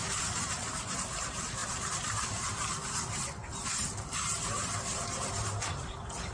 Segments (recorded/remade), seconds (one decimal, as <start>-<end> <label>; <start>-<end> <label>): 0.0-6.3 remade